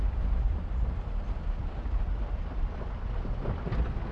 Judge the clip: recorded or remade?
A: remade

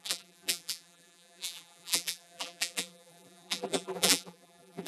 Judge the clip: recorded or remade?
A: remade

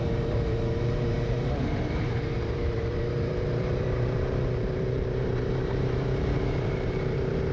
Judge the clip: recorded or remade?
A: remade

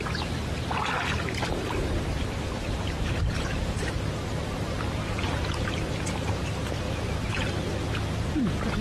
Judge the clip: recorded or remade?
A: remade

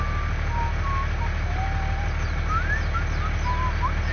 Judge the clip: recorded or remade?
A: recorded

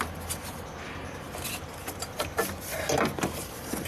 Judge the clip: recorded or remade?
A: recorded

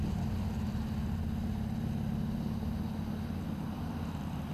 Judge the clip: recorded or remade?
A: recorded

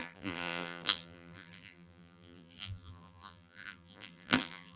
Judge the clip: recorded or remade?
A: remade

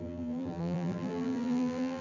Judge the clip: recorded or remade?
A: remade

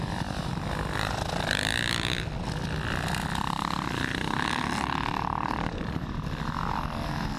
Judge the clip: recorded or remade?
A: recorded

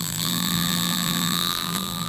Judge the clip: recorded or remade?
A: remade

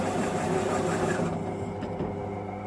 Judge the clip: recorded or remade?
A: remade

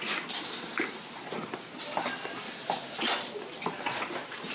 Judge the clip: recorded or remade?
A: remade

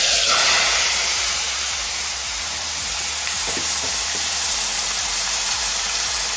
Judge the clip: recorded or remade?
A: remade